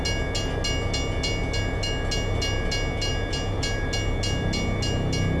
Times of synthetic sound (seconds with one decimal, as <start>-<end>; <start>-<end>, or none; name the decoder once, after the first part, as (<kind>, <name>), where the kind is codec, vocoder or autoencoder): none